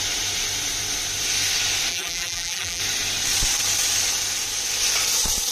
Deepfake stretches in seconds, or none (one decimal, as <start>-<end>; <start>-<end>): 1.9-2.8